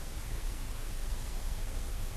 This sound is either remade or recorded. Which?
remade